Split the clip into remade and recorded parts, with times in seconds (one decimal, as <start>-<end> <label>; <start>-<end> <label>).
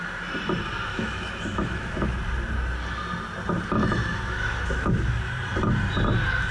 0.0-0.9 recorded; 0.9-2.2 remade; 2.2-3.8 recorded; 3.8-5.3 remade; 5.3-6.5 recorded